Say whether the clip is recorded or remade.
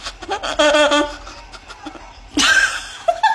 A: recorded